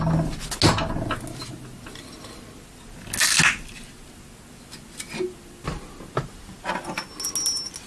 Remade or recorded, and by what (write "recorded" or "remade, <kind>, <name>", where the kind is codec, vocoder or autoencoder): recorded